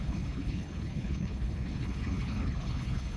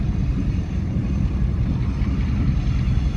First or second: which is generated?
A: first